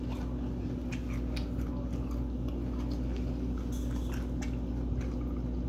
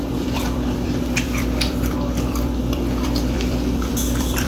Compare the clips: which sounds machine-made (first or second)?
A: second